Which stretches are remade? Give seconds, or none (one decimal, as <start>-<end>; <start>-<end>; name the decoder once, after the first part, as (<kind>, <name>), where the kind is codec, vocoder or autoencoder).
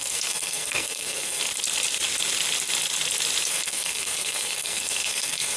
0.0-1.4 (codec, SNAC); 3.5-5.6